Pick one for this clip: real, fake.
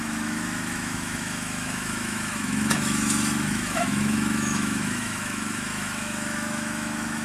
fake